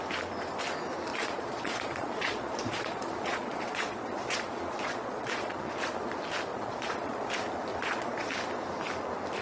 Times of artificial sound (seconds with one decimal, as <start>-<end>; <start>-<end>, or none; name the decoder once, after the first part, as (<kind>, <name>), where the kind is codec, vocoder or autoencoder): 1.1-5.7 (vocoder, Vocos); 6.5-7.3; 7.7-8.3